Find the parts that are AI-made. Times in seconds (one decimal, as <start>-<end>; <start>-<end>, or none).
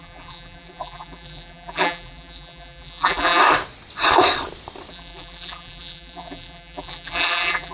0.0-3.4; 4.9-7.7